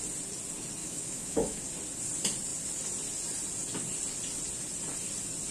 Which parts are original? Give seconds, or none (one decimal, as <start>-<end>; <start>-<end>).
0.0-0.8; 1.6-5.5